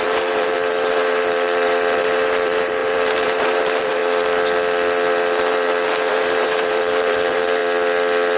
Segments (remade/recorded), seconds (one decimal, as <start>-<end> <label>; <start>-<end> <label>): 0.0-4.0 remade; 4.0-6.1 recorded; 6.1-7.6 remade; 7.6-8.4 recorded